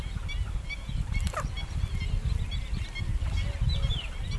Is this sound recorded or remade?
recorded